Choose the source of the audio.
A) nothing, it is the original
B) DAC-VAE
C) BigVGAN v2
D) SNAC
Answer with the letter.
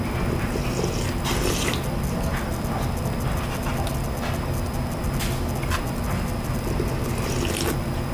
A